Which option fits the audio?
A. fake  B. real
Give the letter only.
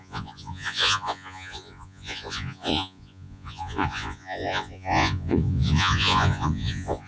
A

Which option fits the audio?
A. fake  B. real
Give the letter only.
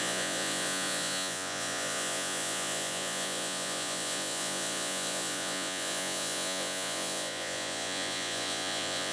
A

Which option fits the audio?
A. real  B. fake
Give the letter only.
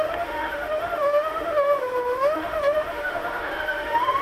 B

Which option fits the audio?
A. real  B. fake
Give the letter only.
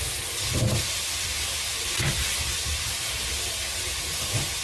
A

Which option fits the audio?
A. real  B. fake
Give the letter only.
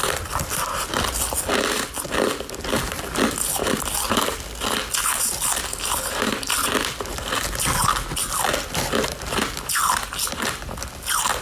A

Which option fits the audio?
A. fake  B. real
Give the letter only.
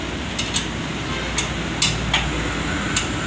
B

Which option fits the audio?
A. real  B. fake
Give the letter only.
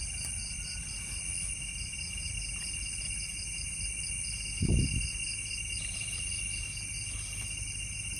A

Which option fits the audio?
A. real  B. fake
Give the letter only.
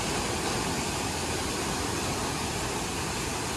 A